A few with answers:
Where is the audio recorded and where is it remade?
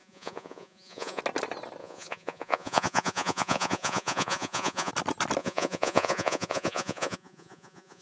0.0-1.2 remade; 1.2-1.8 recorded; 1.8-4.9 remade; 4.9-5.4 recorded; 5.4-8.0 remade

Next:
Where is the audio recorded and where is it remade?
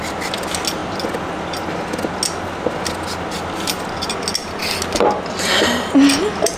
0.0-6.6 recorded